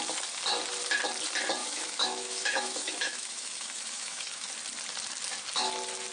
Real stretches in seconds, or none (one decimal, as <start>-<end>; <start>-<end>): 0.0-1.6; 4.5-6.1